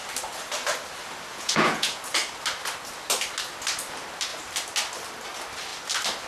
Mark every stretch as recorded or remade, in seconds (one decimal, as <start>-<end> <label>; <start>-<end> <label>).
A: 0.0-1.3 recorded; 1.3-2.0 remade; 2.0-6.3 recorded